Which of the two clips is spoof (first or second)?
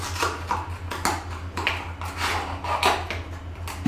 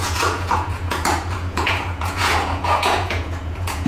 second